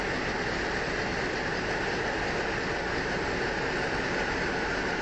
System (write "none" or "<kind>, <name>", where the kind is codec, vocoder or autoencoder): none